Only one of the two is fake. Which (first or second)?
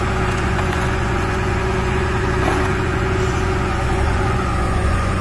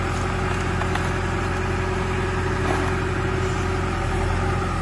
first